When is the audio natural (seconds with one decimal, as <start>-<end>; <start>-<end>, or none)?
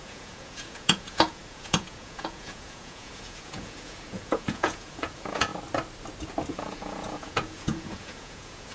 5.5-6.5